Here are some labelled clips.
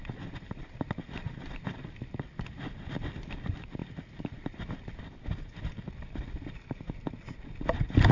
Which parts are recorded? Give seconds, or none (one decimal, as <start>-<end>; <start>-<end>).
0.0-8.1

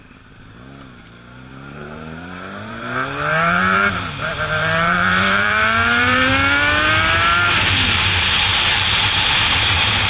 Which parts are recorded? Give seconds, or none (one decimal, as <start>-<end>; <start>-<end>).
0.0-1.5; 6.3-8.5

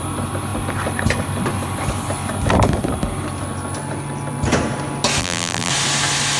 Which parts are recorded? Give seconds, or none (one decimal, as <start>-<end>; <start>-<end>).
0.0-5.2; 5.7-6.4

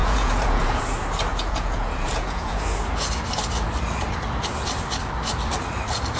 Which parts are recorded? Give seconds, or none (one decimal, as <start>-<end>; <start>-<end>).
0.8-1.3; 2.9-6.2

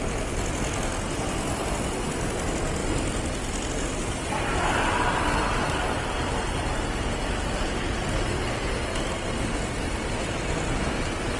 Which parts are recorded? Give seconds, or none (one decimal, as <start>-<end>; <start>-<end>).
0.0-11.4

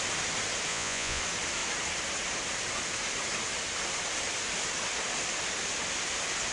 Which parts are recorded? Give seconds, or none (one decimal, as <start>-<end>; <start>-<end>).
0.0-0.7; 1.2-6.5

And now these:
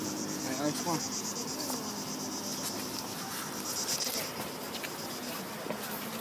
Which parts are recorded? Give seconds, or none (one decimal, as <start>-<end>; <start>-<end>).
0.8-6.2

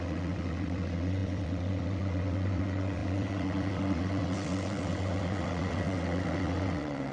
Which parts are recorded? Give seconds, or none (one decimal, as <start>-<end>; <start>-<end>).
none